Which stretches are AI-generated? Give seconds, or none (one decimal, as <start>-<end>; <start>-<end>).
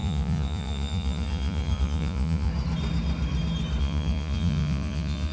0.0-2.5; 3.8-5.3